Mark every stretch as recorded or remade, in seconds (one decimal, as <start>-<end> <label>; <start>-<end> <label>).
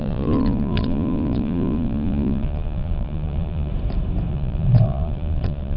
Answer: 0.0-3.7 remade; 3.7-4.3 recorded; 4.3-5.8 remade